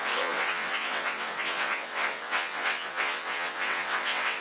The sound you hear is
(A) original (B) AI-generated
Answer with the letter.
B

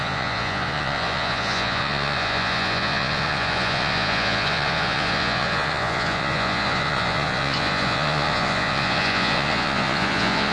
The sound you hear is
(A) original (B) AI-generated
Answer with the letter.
B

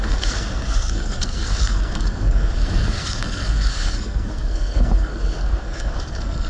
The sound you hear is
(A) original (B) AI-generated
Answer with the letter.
B